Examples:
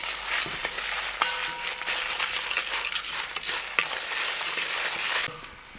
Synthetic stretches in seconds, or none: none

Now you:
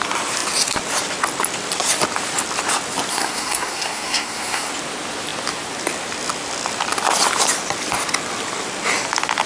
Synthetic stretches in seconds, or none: 3.1-4.7

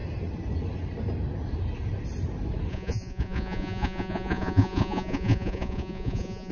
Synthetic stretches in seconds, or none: 2.7-6.5

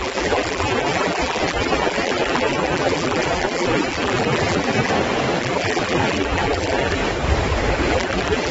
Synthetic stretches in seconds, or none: 0.0-4.9; 5.4-7.0; 7.9-8.5

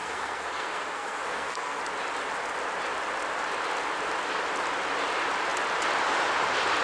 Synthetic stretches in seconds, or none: 0.0-1.8

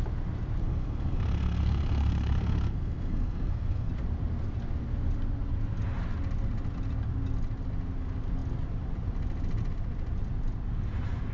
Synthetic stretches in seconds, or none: 0.6-3.9